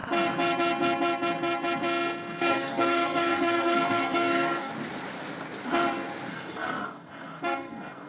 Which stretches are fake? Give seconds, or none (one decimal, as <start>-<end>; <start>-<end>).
2.4-4.7; 6.3-8.1